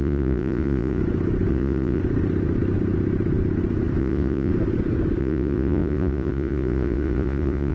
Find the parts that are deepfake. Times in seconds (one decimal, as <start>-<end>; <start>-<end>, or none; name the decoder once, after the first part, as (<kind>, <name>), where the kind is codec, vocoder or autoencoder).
0.0-1.0 (vocoder, Vocos); 1.5-2.0; 4.0-4.5; 5.2-7.7